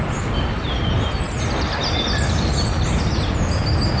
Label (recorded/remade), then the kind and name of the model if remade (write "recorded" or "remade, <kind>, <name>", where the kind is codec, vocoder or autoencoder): recorded